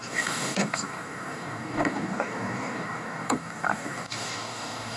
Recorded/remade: remade